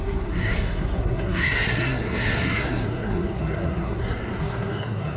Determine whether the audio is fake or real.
fake